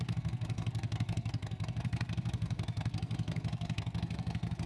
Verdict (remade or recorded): remade